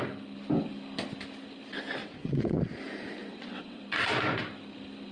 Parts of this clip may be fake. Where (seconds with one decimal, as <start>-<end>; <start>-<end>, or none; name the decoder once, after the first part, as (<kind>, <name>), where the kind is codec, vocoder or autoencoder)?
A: 2.0-2.6 (vocoder, WaveNeXt); 3.3-3.8